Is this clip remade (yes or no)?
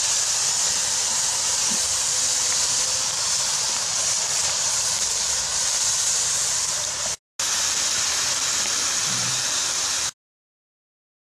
no